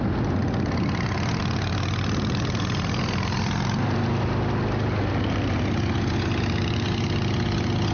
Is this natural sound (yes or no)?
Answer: yes